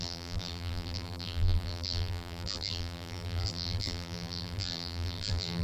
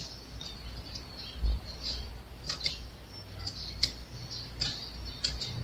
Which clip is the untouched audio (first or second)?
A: second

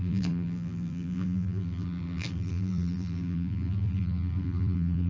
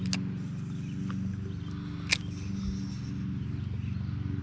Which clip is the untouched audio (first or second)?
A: second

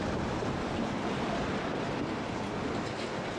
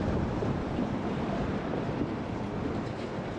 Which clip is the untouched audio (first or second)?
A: first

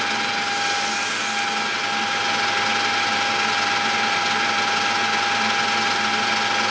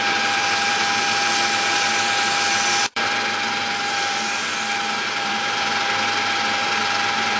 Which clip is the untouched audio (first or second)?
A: first